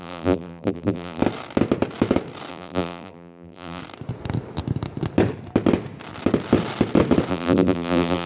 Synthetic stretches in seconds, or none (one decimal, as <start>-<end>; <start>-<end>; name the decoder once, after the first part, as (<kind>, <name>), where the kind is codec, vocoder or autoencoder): 0.0-1.2 (vocoder, BigVGAN v2); 2.5-3.8; 7.3-8.3